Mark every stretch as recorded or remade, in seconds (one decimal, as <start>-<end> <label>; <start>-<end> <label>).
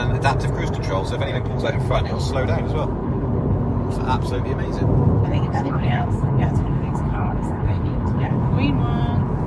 0.0-1.3 recorded; 1.3-2.3 remade; 2.3-3.0 recorded; 3.0-3.6 remade; 3.6-5.2 recorded; 5.2-8.4 remade; 8.4-9.5 recorded